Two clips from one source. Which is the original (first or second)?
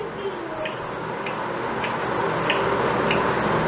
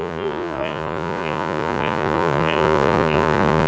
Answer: first